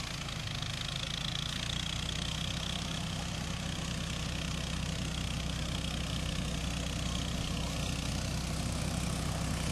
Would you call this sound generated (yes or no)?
no